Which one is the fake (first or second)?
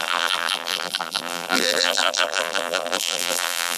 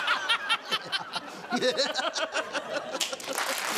first